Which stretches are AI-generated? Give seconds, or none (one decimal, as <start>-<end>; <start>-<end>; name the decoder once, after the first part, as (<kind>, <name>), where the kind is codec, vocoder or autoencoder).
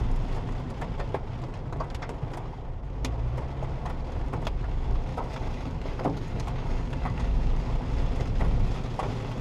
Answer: 5.1-7.6 (codec, DAC)